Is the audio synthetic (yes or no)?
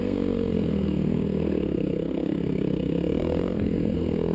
yes